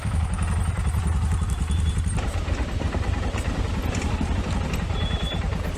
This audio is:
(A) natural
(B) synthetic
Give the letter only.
A